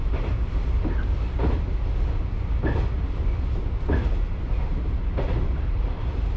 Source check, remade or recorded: recorded